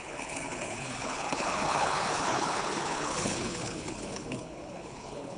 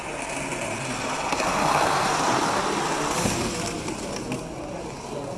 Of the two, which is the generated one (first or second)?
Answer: first